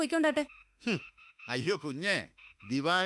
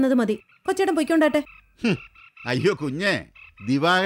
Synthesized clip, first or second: first